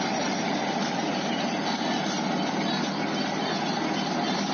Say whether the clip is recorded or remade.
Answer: recorded